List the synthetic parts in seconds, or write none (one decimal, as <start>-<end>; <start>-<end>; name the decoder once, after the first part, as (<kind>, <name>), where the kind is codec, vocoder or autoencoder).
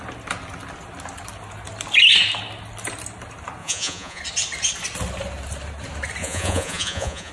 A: 3.6-4.2 (vocoder, Vocos); 6.2-7.3